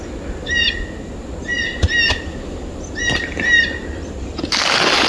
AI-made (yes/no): no